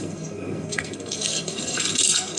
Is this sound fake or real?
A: fake